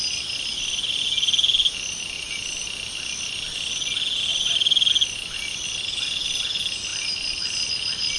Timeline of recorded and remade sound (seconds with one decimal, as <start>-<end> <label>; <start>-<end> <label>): 0.0-4.3 recorded; 4.3-4.9 remade; 4.9-6.9 recorded; 6.9-7.7 remade; 7.7-8.2 recorded